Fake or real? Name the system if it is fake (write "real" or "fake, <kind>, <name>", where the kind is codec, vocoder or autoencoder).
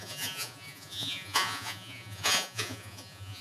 fake, vocoder, Vocos